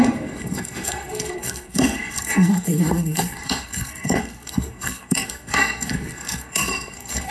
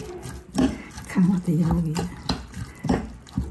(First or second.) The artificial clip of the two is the first